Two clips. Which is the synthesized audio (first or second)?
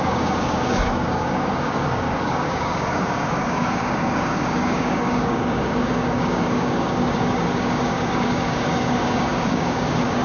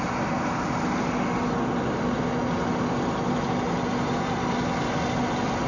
first